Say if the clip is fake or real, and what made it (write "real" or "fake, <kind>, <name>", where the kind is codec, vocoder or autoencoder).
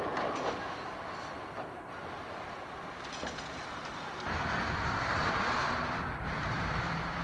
fake, vocoder, BigVGAN v2